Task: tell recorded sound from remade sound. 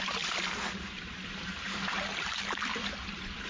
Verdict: recorded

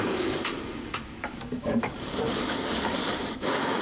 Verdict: remade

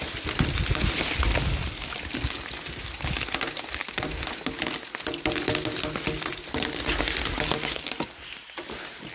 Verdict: recorded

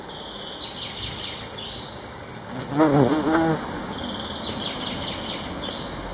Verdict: recorded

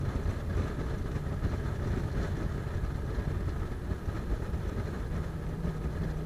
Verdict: recorded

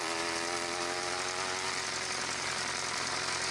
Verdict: recorded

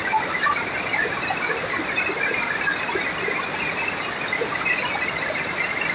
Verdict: recorded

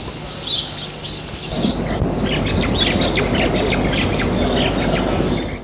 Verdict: recorded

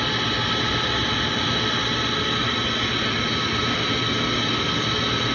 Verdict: recorded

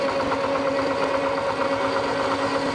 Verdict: recorded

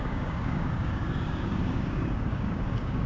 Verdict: remade